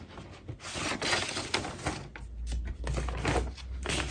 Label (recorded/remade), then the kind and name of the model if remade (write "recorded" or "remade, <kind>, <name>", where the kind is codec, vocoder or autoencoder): recorded